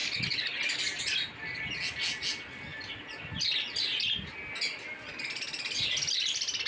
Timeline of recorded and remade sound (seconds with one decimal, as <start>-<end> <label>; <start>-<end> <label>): 0.0-6.7 recorded